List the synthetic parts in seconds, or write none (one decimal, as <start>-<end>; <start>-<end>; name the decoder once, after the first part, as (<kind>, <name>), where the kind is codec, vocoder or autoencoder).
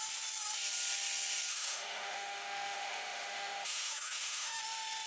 1.5-4.6 (autoencoder, DAC-VAE)